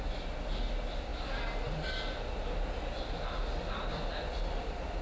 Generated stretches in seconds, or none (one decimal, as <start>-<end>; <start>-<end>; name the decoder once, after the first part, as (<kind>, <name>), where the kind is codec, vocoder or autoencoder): none